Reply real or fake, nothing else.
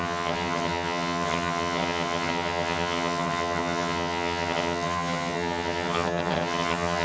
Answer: fake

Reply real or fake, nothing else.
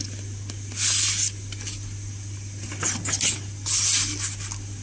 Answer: real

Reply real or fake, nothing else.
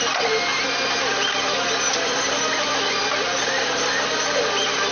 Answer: real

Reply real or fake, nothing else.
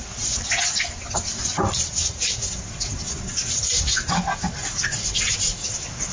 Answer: real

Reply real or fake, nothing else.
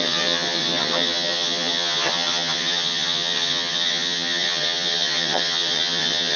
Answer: fake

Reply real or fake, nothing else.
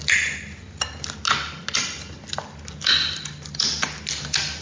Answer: real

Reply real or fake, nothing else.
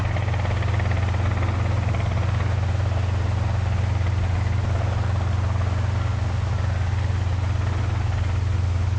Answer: real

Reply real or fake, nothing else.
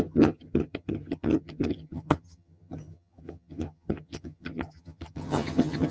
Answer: fake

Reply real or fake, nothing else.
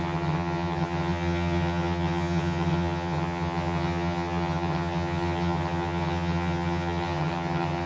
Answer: fake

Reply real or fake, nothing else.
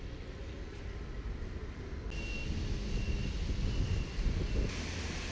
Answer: real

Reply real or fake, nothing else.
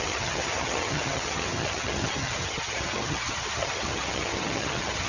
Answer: fake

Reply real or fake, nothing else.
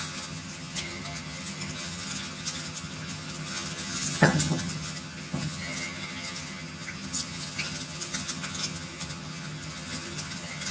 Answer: fake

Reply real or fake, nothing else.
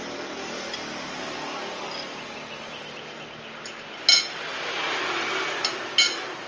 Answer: real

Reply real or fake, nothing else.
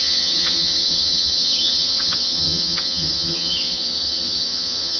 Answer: fake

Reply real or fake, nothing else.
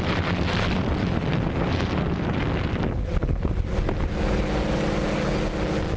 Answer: real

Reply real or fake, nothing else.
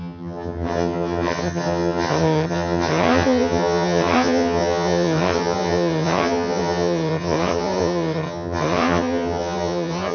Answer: fake